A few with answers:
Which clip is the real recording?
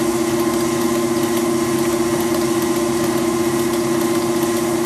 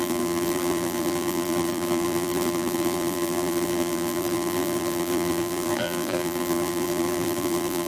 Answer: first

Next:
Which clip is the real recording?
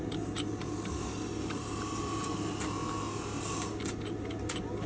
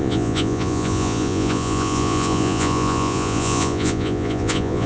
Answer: first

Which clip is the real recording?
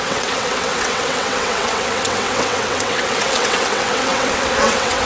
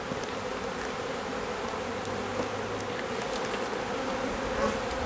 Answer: second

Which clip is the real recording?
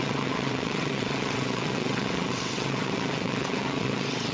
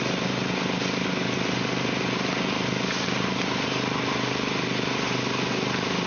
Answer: second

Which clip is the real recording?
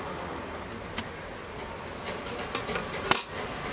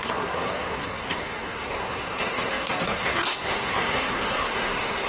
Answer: first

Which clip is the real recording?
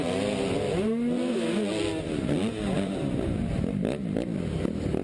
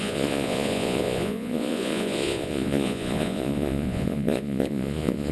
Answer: first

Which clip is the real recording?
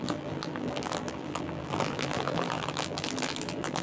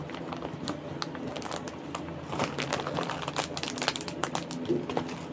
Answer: second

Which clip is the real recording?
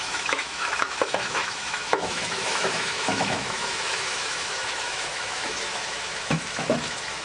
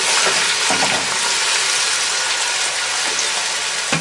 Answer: second